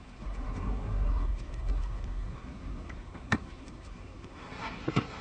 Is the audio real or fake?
fake